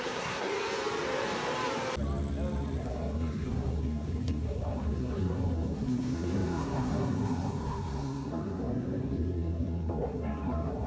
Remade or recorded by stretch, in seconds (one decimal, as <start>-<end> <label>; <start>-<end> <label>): 0.0-0.5 remade; 0.5-2.8 recorded; 2.8-10.9 remade